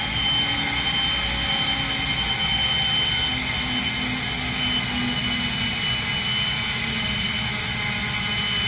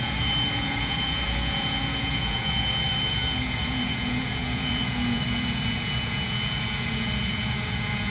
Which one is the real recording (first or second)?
first